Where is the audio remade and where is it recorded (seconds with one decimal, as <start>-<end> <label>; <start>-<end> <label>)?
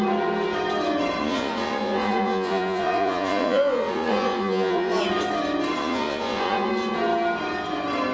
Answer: 0.0-1.2 recorded; 1.2-5.0 remade; 5.0-5.8 recorded; 5.8-6.7 remade; 6.7-8.1 recorded